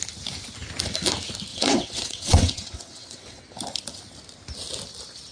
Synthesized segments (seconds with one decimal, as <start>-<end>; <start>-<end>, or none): 1.5-3.4

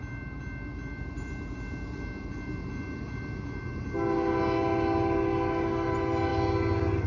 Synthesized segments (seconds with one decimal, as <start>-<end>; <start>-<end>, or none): none

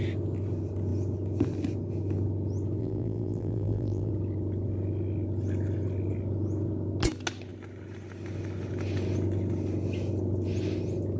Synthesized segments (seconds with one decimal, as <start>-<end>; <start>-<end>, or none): 2.8-4.1

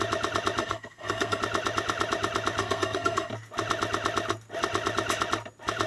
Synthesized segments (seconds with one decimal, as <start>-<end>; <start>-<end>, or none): 0.6-1.4; 2.6-3.3

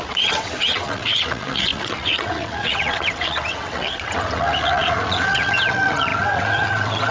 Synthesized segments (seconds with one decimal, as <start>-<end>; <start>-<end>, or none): 0.0-7.1